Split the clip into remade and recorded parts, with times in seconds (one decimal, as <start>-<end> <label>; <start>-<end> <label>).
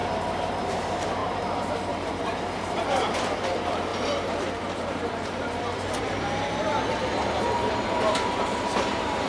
0.0-0.6 recorded; 0.6-9.3 remade